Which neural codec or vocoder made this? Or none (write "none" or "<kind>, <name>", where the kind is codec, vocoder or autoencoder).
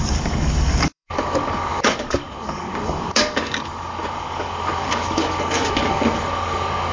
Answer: codec, DAC